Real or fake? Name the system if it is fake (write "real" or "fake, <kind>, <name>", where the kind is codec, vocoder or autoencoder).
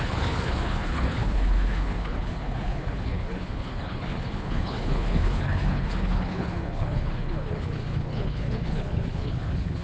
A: fake, codec, HILCodec